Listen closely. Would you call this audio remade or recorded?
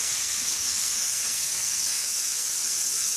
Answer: remade